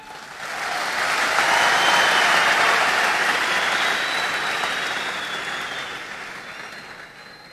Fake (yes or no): no